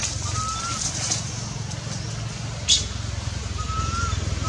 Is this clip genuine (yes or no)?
yes